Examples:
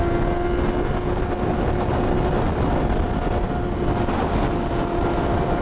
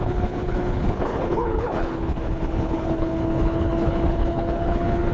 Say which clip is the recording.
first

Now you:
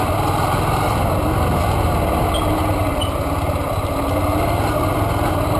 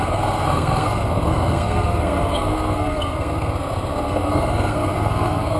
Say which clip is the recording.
first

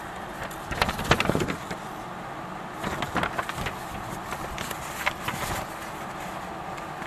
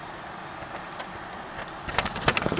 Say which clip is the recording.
first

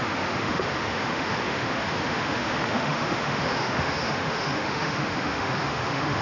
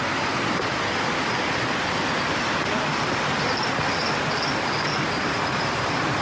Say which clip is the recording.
second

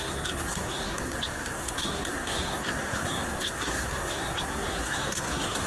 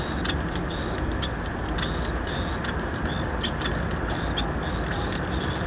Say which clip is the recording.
second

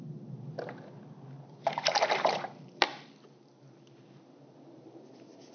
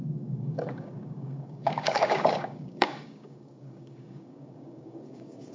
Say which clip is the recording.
first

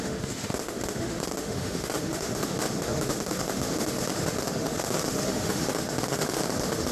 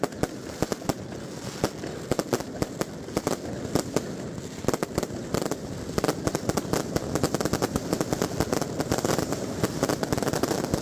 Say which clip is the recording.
second